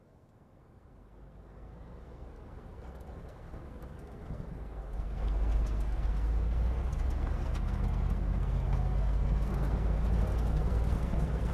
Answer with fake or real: fake